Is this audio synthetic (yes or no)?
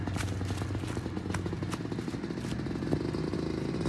no